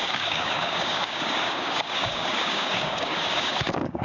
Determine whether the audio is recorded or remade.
remade